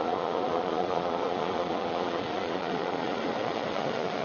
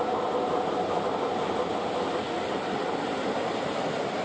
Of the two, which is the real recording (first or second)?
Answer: second